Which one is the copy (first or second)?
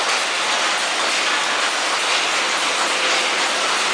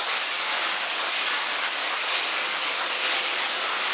second